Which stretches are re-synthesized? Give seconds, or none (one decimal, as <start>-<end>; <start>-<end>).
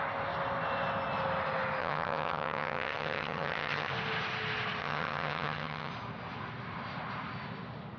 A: 1.8-3.9; 4.8-5.9